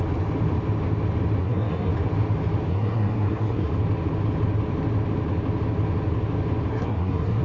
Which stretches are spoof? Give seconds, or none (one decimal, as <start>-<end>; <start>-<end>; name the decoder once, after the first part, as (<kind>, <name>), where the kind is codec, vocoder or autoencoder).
1.4-1.9 (codec, SNAC); 2.7-3.7; 6.7-7.4